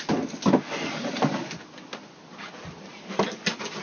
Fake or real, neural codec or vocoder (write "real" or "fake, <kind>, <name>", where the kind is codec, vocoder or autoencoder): real